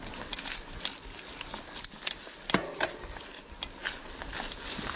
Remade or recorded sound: recorded